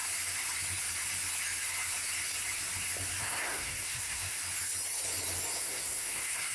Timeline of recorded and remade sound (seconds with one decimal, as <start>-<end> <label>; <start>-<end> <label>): 0.0-3.2 recorded; 3.2-4.4 remade; 4.4-5.6 recorded; 5.6-6.5 remade